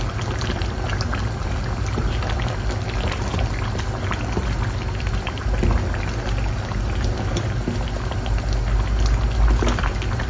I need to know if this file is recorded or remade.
recorded